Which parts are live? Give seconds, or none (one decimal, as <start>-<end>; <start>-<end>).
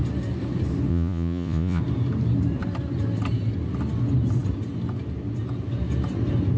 0.0-0.9; 1.8-6.6